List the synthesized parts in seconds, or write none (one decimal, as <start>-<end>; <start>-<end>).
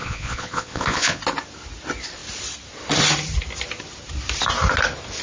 0.0-1.2